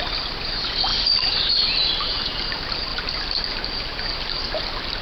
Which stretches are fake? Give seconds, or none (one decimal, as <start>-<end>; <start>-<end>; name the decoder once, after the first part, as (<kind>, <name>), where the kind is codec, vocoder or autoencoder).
0.9-1.5 (vocoder, BigVGAN v2); 2.9-3.5